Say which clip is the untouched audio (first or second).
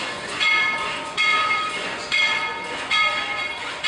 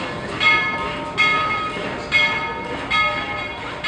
second